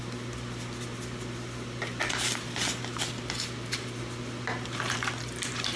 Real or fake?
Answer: real